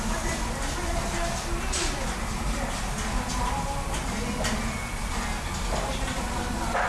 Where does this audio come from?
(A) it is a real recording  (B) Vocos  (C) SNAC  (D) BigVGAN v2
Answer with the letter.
A